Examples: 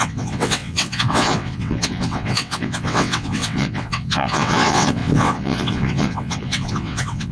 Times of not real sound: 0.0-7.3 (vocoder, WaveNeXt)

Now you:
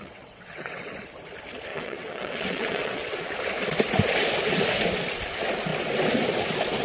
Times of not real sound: 0.0-0.9 (vocoder, WaveNeXt); 1.7-3.3

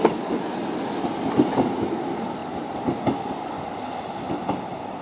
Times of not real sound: none

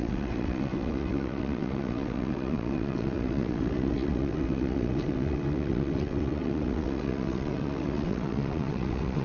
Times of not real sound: 0.0-9.2 (vocoder, WaveNeXt)

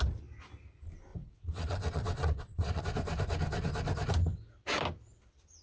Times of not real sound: 1.1-2.8 (vocoder, WaveNeXt)

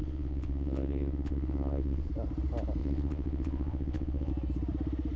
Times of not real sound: 0.0-2.1 (vocoder, WaveNeXt); 2.8-4.3

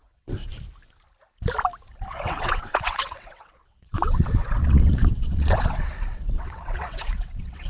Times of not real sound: 0.0-0.5 (vocoder, WaveNeXt); 2.1-7.7

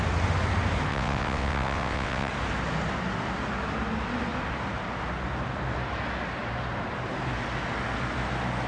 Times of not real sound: 0.9-2.3 (vocoder, WaveNeXt)